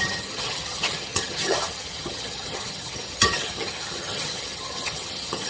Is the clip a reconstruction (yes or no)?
yes